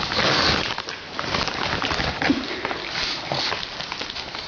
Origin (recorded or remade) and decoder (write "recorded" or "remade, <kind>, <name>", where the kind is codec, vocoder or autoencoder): recorded